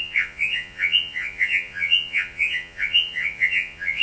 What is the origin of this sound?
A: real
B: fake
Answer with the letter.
B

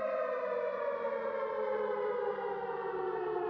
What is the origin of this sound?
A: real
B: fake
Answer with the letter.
A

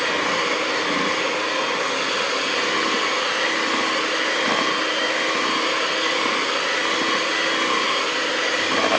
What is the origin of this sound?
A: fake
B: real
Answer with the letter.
B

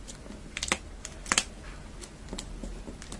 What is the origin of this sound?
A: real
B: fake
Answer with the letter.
A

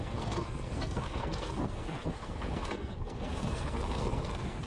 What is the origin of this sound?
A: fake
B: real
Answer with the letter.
A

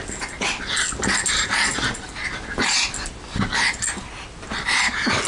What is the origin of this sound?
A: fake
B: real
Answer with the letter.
B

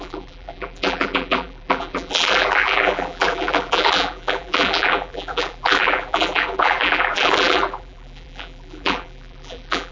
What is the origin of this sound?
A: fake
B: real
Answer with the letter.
A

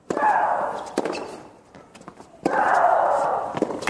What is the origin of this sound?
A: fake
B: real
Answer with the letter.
B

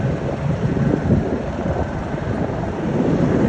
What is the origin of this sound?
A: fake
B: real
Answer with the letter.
A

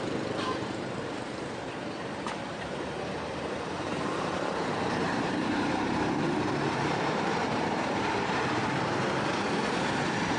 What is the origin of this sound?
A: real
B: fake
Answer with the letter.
B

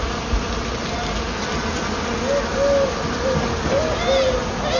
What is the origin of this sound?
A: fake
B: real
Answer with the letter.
B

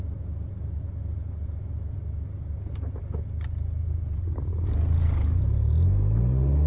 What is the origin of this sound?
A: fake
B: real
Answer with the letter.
B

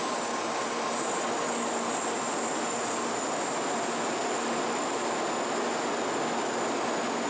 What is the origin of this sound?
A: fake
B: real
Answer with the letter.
B